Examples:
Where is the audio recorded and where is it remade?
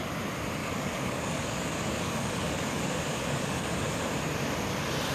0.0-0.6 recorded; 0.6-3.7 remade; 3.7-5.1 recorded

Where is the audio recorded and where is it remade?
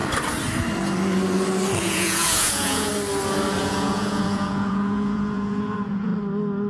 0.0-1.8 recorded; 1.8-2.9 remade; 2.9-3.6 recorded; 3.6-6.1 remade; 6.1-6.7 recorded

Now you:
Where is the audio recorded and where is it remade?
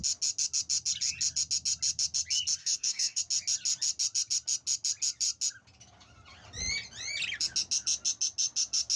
0.0-2.6 recorded; 2.6-3.2 remade; 3.2-9.0 recorded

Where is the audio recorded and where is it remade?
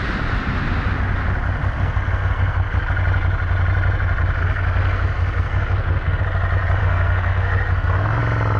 0.0-1.6 recorded; 1.6-2.8 remade; 2.8-4.4 recorded; 4.4-6.2 remade; 6.2-6.8 recorded; 6.8-8.2 remade; 8.2-8.6 recorded